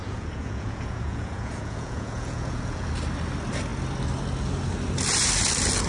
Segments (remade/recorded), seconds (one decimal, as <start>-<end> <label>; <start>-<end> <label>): 0.0-2.9 remade; 2.9-5.9 recorded